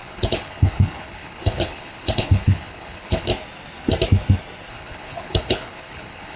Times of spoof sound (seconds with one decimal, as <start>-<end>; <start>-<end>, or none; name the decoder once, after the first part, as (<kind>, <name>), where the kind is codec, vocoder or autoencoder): 0.0-3.3 (codec, HILCodec); 4.7-6.4